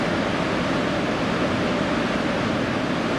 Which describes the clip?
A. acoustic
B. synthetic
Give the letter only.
A